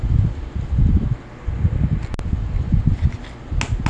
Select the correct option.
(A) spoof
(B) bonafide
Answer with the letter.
B